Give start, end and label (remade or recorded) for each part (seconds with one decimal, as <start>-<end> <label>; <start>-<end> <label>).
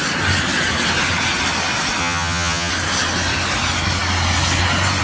0.0-2.0 recorded; 2.0-2.7 remade; 2.7-5.0 recorded